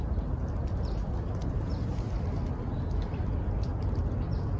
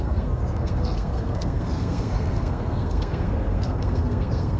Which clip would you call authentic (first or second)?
first